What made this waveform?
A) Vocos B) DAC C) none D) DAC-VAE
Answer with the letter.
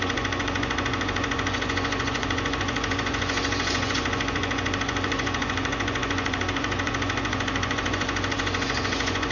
A